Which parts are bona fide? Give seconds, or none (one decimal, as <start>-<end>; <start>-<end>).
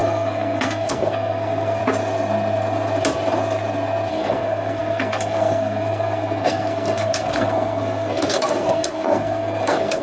1.8-4.1